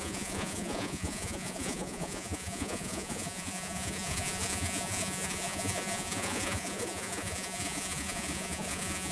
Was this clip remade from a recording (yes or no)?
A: yes